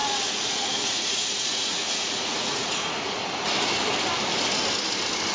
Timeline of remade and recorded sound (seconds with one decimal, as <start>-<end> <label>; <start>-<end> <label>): 0.0-3.2 remade; 3.2-5.3 recorded

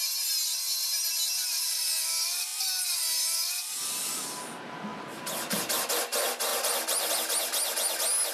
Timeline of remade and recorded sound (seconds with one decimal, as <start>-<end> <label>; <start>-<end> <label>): 0.0-8.3 recorded

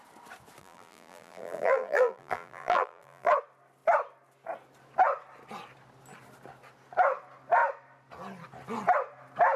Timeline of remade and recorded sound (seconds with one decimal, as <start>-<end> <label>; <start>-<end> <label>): 0.0-0.6 recorded; 0.6-3.3 remade; 3.3-9.6 recorded

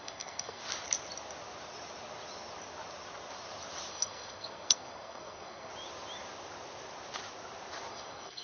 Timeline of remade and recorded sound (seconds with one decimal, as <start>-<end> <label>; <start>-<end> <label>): 0.0-0.6 remade; 0.6-3.9 recorded; 3.9-5.7 remade; 5.7-7.9 recorded; 7.9-8.4 remade

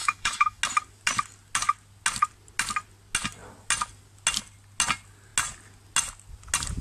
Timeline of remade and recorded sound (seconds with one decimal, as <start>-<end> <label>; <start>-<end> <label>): 0.0-0.6 remade; 0.6-6.8 recorded

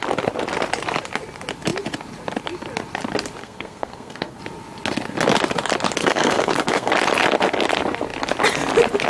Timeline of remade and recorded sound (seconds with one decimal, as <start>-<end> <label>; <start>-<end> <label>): 0.0-3.4 recorded; 3.4-4.4 remade; 4.4-6.0 recorded; 6.0-6.9 remade; 6.9-9.1 recorded